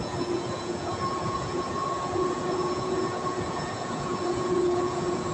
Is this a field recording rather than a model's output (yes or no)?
no